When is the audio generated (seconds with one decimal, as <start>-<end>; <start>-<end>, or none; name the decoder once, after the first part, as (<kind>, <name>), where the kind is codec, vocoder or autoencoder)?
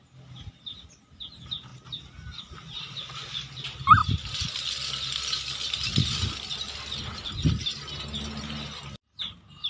none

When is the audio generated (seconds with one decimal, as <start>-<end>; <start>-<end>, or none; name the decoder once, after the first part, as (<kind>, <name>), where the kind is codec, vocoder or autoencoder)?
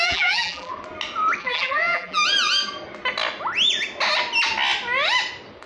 0.0-0.7 (vocoder, BigVGAN v2); 1.4-2.2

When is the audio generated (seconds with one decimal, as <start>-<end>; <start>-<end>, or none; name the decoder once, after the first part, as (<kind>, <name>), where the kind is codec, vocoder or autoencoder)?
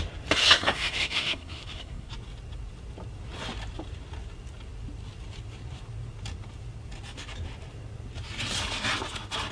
0.4-2.1 (codec, SNAC)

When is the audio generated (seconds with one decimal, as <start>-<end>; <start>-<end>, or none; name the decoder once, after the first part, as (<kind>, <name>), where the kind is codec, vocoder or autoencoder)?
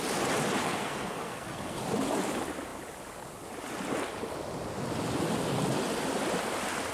0.6-1.8 (codec, SNAC)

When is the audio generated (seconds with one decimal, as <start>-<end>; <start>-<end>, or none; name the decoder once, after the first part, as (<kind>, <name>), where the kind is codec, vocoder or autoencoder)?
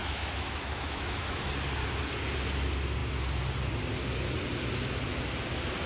0.0-1.5 (autoencoder, DAC-VAE)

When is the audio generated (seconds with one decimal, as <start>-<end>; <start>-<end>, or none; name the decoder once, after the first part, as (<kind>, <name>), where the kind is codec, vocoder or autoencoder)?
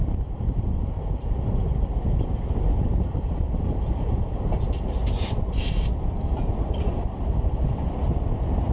none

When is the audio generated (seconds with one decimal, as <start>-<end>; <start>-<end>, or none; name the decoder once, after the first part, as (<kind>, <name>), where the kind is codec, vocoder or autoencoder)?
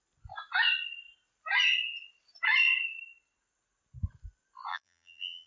4.7-5.5 (vocoder, BigVGAN v2)